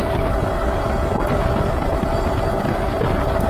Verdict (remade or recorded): recorded